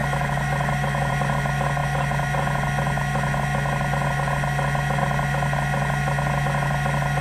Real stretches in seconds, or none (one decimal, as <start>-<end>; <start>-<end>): 1.1-7.2